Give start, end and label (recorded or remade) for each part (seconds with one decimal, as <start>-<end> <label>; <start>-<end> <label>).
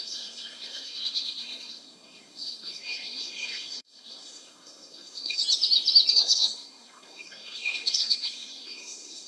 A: 0.0-5.4 remade; 5.4-6.1 recorded; 6.1-9.3 remade